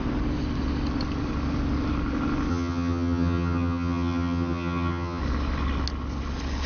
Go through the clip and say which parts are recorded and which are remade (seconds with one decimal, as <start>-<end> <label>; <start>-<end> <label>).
0.0-2.5 recorded; 2.5-5.2 remade; 5.2-6.7 recorded